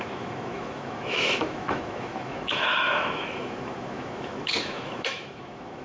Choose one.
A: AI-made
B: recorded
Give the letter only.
A